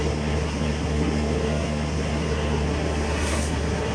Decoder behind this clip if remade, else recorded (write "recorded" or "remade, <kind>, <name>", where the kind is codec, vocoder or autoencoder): remade, codec, SNAC